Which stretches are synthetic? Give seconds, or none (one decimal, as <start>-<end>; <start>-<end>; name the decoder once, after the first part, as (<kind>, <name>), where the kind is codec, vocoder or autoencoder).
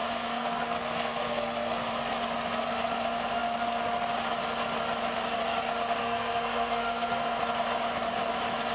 0.0-1.9 (codec, SNAC); 6.0-7.4